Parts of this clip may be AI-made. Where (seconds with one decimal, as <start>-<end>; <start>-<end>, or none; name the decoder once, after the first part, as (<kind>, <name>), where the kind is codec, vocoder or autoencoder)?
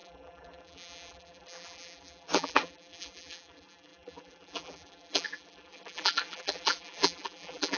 0.0-7.8 (vocoder, BigVGAN v2)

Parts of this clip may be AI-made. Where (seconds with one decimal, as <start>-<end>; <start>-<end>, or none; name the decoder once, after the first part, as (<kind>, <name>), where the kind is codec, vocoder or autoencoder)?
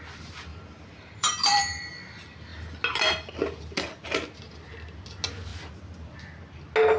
0.5-1.9 (vocoder, BigVGAN v2)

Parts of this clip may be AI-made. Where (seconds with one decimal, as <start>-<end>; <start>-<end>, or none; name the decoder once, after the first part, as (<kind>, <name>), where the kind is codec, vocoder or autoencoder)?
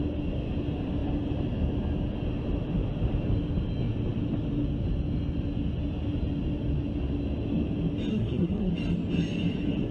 8.1-8.7 (codec, SNAC)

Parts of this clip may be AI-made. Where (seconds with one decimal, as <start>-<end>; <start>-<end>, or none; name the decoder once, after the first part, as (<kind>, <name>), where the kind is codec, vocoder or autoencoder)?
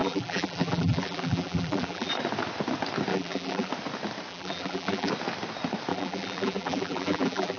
0.0-2.1 (vocoder, BigVGAN v2); 3.1-3.7; 4.3-5.1; 5.9-7.6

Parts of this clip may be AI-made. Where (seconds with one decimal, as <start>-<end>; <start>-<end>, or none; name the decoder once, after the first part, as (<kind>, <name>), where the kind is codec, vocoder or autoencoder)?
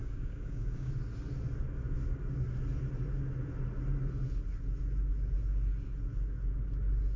0.0-0.9 (codec, DAC)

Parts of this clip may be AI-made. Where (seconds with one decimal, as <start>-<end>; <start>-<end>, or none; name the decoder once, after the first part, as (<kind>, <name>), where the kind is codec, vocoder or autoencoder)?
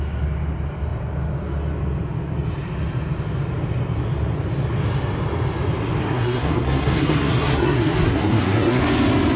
6.0-8.8 (codec, SNAC)